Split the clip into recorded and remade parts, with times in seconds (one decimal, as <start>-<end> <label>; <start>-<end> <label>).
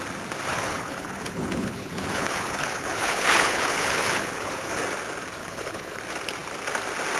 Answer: 0.0-0.5 recorded; 0.5-4.8 remade; 4.8-5.4 recorded; 5.4-6.0 remade; 6.0-7.2 recorded